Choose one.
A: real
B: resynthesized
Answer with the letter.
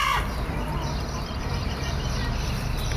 B